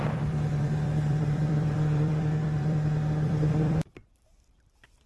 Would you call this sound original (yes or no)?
no